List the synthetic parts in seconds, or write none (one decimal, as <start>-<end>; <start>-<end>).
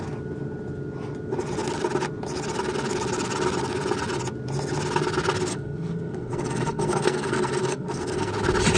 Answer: 5.5-8.3